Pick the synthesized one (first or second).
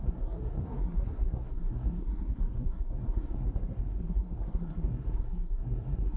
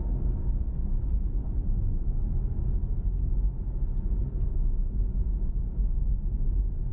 first